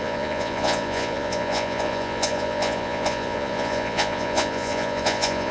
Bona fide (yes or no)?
no